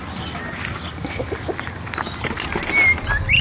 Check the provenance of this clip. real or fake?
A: real